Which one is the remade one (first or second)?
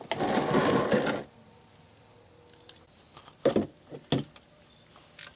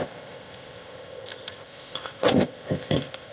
second